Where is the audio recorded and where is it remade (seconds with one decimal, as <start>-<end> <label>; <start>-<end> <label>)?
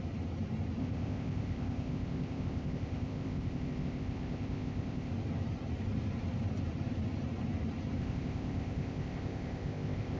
0.0-0.8 recorded; 0.8-5.1 remade; 5.1-8.0 recorded; 8.0-10.2 remade